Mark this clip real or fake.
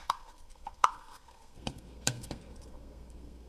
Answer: fake